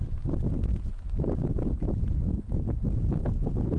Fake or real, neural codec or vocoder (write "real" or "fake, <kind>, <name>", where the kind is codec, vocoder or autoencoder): fake, vocoder, BigVGAN v2